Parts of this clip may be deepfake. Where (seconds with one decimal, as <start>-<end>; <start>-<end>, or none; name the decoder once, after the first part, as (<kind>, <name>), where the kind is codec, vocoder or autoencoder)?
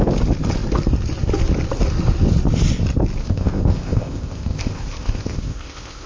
3.2-6.1 (codec, ZipCodec)